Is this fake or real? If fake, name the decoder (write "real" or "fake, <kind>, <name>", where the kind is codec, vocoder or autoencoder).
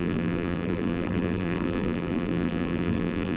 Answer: fake, vocoder, BigVGAN v2